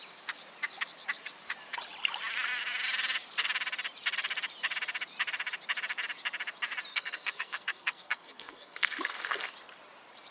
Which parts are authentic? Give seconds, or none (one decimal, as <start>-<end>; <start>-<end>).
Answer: 0.0-6.9; 9.5-10.3